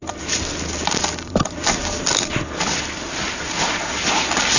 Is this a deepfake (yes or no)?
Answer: no